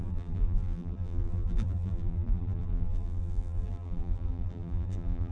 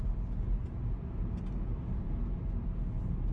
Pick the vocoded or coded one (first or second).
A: first